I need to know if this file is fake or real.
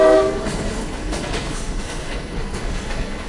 fake